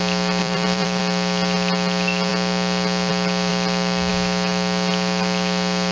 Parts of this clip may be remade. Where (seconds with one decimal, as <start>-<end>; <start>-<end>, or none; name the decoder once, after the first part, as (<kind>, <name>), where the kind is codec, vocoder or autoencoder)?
0.4-1.0 (vocoder, BigVGAN v2)